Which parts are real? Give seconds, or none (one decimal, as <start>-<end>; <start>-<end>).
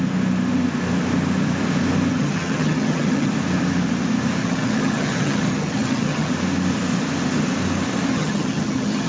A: 0.0-2.1; 3.3-4.4; 6.3-8.1